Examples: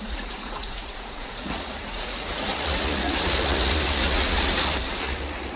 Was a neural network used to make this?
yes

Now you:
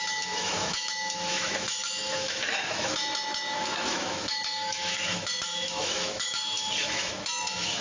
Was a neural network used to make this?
yes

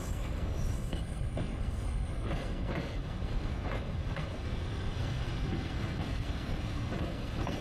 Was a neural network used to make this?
yes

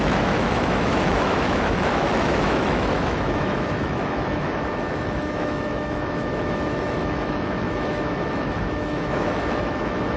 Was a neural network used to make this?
yes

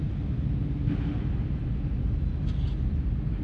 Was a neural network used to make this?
no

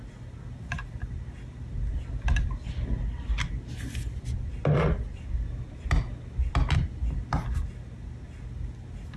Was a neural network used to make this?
no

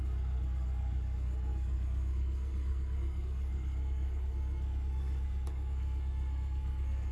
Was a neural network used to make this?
yes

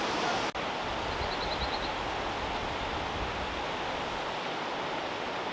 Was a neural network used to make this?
no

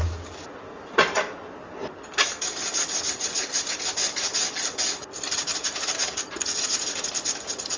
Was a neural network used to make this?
no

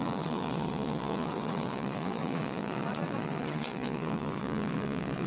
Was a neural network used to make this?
yes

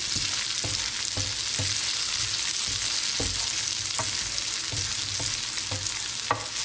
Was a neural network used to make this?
no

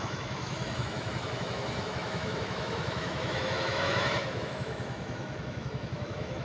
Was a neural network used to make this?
yes